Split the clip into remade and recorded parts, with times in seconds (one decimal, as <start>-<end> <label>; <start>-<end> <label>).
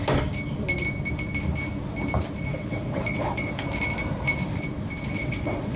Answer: 0.0-2.5 recorded; 2.5-3.5 remade; 3.5-5.2 recorded; 5.2-5.8 remade